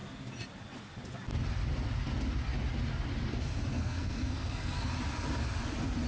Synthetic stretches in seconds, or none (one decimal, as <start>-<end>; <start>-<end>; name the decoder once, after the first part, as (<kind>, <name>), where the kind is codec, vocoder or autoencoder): 3.7-4.9 (codec, SNAC)